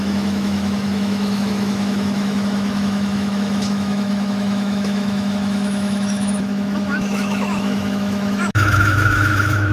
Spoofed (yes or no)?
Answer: yes